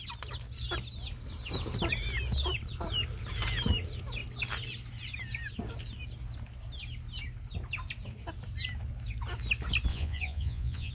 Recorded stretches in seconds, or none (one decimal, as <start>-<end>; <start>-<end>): 0.0-9.9